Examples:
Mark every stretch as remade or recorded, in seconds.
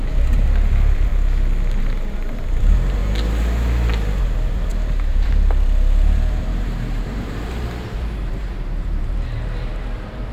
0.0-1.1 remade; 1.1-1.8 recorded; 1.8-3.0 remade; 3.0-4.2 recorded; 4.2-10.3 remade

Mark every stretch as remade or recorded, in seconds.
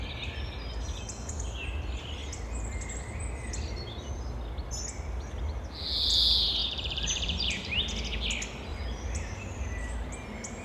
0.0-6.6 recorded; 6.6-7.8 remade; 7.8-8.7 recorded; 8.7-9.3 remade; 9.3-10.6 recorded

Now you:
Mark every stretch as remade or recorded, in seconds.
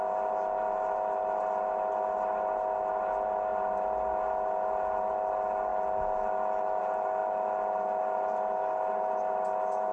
0.0-9.9 recorded